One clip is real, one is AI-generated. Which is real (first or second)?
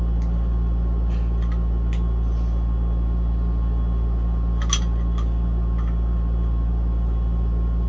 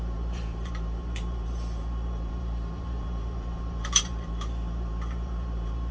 first